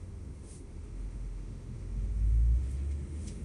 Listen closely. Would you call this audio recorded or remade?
remade